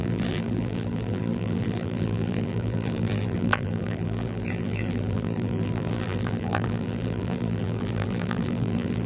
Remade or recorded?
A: remade